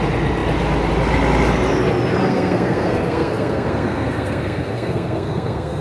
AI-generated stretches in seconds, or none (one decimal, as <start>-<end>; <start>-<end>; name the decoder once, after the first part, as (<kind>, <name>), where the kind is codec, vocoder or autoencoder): 2.2-5.8 (codec, SNAC)